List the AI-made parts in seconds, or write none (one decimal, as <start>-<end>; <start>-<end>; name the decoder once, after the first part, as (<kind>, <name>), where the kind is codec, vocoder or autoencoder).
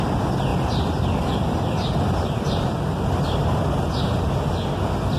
0.5-3.6 (vocoder, BigVGAN v2)